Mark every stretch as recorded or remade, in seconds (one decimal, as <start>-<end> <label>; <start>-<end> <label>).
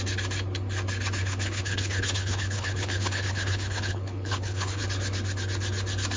0.0-1.2 recorded; 1.2-4.8 remade; 4.8-6.2 recorded